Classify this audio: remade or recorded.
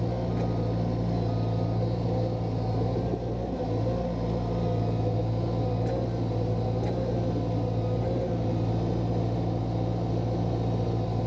recorded